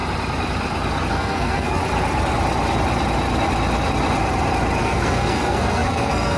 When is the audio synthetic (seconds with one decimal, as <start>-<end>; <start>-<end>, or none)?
1.1-1.8; 4.8-6.4